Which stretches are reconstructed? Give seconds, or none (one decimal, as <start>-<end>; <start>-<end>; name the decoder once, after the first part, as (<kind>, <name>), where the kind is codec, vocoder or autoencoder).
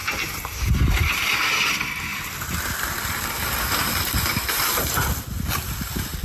0.0-1.3 (vocoder, BigVGAN v2)